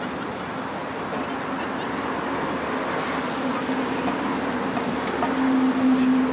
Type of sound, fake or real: real